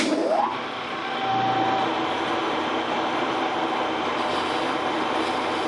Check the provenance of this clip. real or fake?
real